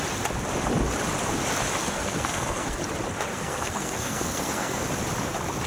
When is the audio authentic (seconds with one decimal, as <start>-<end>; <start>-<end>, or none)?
0.0-1.8; 2.8-3.3; 4.9-5.7